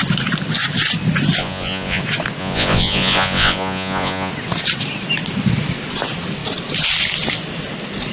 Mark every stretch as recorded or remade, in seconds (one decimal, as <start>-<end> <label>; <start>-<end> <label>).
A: 0.0-1.4 recorded; 1.4-2.0 remade; 2.0-2.4 recorded; 2.4-4.3 remade; 4.3-8.1 recorded